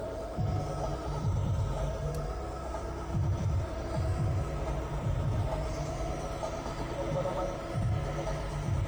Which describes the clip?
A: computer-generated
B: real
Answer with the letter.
B